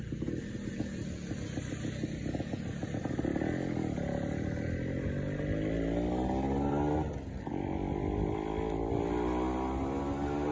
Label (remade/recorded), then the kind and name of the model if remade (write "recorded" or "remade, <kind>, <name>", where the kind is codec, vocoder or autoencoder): recorded